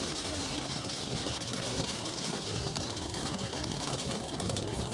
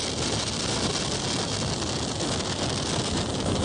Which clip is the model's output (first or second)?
first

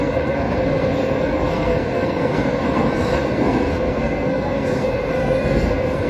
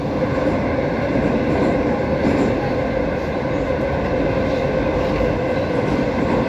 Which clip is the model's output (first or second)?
first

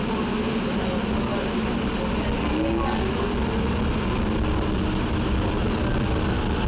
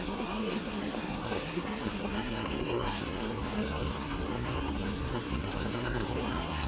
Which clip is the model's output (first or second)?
second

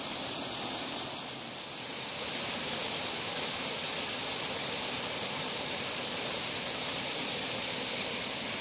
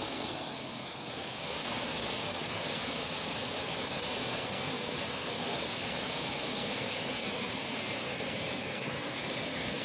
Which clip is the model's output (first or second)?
second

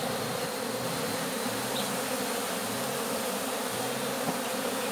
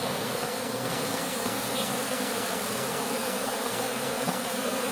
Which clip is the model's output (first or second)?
second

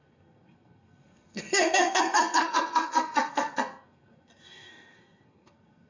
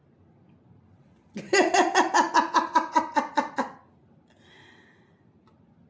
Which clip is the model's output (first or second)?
first